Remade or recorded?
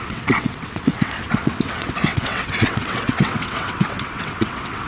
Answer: remade